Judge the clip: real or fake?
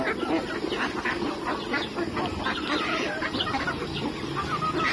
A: real